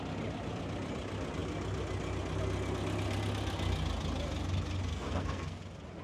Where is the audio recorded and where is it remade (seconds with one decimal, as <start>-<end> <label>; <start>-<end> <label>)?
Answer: 0.0-4.9 recorded; 4.9-5.6 remade; 5.6-6.0 recorded